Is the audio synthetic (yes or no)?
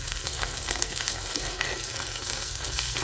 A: yes